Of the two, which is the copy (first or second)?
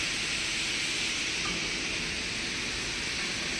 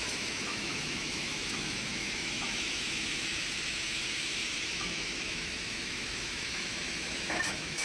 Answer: second